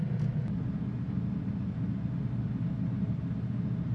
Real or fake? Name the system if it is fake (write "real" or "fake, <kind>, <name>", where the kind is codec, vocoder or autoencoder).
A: real